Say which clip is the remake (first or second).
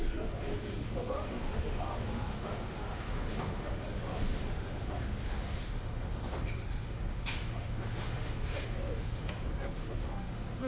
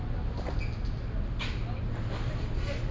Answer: first